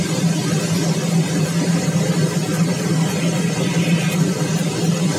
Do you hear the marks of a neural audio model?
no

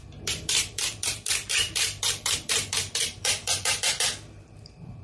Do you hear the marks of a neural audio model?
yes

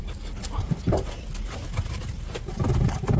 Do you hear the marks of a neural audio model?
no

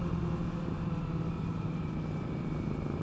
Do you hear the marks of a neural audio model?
no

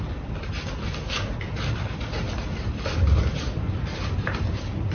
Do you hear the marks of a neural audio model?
no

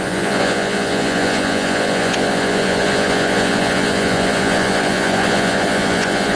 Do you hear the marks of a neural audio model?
yes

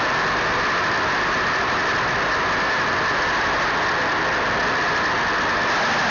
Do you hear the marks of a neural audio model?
no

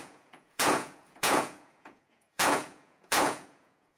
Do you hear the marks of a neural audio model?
yes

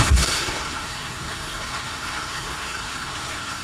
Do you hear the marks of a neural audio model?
yes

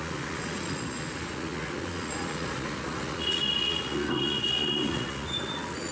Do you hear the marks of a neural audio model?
yes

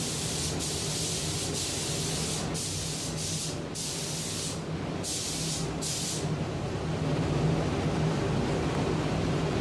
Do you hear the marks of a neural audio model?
no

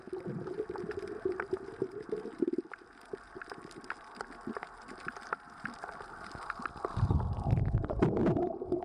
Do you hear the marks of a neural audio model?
no